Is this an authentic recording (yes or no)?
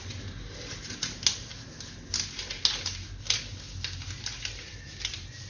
yes